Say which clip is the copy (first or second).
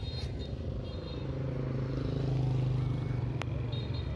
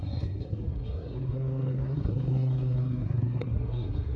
second